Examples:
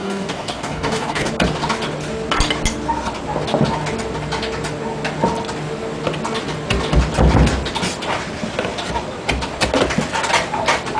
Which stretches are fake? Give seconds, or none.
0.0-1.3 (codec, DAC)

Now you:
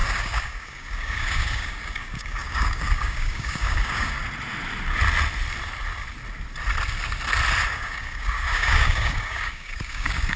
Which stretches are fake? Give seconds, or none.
0.0-4.2 (codec, DAC); 7.7-10.4

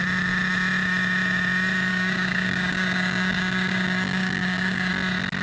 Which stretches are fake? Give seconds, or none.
1.9-4.9 (codec, DAC)

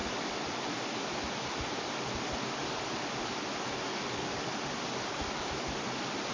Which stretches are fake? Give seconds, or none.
3.9-4.4 (codec, DAC)

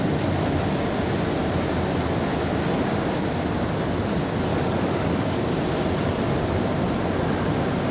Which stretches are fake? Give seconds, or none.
4.5-5.4 (codec, DAC)